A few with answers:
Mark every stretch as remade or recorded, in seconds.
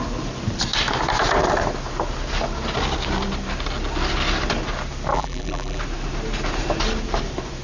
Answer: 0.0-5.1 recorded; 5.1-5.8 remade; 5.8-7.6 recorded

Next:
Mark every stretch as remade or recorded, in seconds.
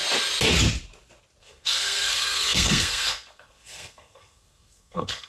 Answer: 0.0-1.4 recorded; 1.4-5.3 remade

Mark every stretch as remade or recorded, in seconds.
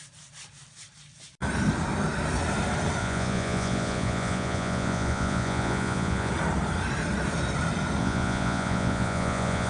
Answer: 0.0-3.0 recorded; 3.0-6.3 remade; 6.3-8.0 recorded; 8.0-9.7 remade